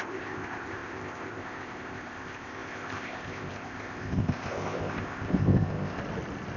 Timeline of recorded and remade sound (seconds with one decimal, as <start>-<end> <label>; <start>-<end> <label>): 0.0-6.0 remade; 6.0-6.6 recorded

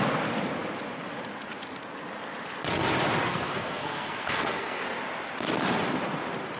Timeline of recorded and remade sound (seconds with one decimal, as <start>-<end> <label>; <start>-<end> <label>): 0.0-3.3 recorded; 3.3-4.8 remade; 4.8-6.6 recorded

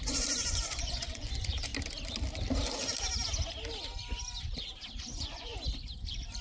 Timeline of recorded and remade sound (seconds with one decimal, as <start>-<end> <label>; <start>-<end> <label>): 0.0-1.7 remade; 1.7-5.0 recorded; 5.0-5.5 remade; 5.5-6.4 recorded

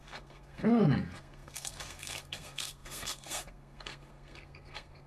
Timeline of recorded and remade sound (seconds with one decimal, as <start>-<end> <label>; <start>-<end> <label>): 0.0-5.1 remade

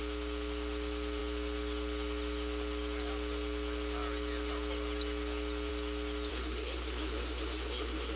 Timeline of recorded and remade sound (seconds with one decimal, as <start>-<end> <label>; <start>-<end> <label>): 0.0-6.3 recorded; 6.3-8.2 remade